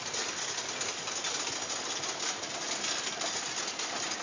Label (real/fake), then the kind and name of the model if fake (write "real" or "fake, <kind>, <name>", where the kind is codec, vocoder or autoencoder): real